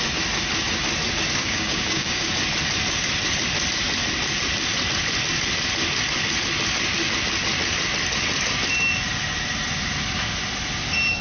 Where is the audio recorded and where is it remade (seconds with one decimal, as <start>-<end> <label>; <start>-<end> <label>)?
0.0-1.4 recorded; 1.4-2.3 remade; 2.3-11.2 recorded